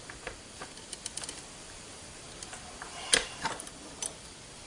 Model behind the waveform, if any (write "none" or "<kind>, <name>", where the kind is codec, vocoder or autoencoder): vocoder, BigVGAN v2